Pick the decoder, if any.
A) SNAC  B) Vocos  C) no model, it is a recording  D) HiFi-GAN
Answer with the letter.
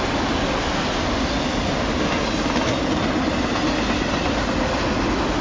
C